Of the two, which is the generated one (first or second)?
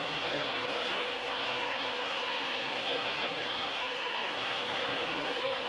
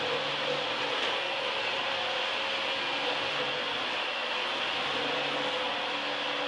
first